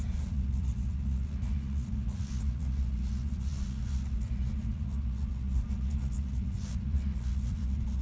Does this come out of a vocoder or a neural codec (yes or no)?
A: yes